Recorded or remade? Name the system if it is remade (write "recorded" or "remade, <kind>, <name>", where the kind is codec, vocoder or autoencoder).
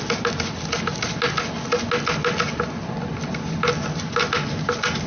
recorded